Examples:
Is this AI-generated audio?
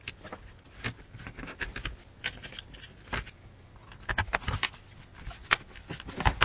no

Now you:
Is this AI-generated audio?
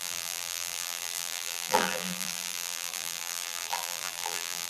yes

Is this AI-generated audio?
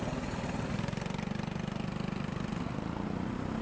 no